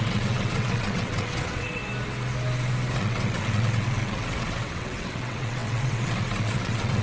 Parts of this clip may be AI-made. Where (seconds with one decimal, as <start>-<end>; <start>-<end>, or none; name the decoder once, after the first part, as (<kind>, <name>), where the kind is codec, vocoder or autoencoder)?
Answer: 0.0-1.8 (vocoder, WaveNeXt); 2.9-7.0